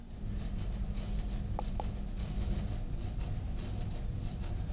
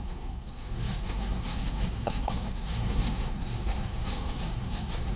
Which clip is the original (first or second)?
first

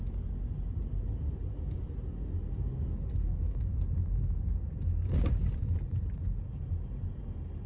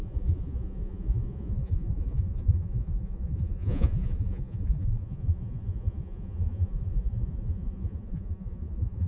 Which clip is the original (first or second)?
first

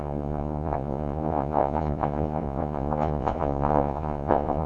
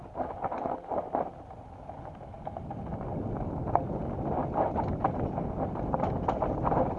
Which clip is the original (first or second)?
second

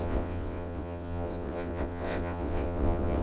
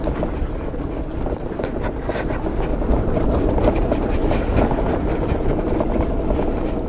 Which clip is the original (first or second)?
second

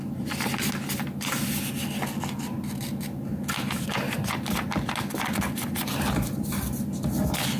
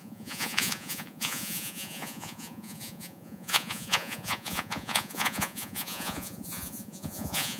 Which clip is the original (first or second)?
first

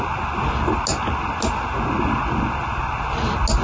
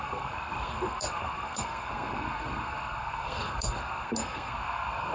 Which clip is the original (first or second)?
first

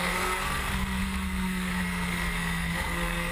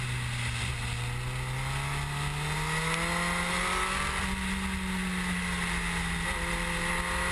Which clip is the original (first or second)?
second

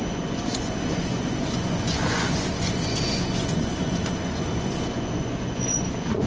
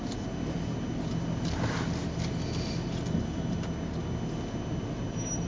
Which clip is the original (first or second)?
second